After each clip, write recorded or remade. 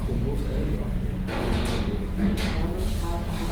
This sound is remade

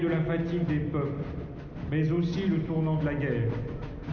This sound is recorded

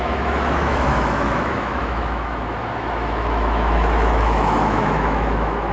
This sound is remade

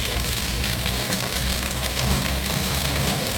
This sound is remade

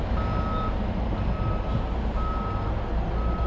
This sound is recorded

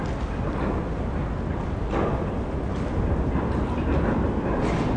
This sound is recorded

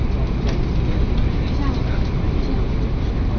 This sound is recorded